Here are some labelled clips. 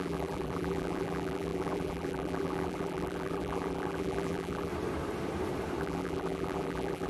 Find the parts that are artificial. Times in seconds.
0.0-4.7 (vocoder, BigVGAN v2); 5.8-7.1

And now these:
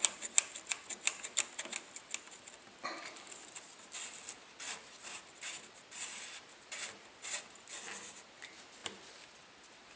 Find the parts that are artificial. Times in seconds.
none

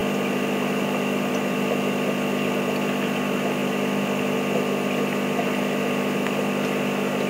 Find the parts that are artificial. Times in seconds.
none

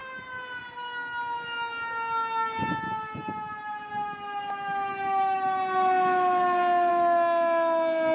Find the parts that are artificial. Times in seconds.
none

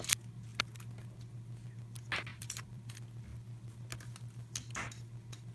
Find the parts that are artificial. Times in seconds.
2.3-2.9 (vocoder, BigVGAN v2)

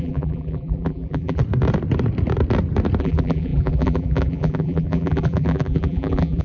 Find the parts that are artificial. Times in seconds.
0.0-1.4 (vocoder, BigVGAN v2); 3.0-6.4

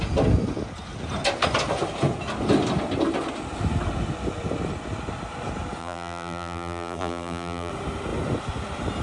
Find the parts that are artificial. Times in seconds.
5.8-7.7 (vocoder, BigVGAN v2)

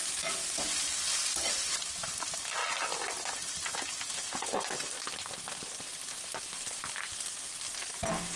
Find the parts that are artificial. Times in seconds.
0.4-1.8 (vocoder, BigVGAN v2)